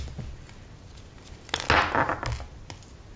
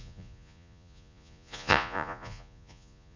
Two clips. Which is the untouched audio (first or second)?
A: first